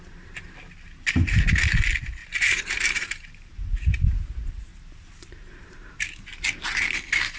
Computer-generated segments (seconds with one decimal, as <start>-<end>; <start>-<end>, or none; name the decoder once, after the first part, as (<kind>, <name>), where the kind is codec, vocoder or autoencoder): 2.2-4.1 (vocoder, BigVGAN v2); 4.7-6.1